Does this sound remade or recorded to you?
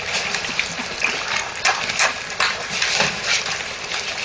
recorded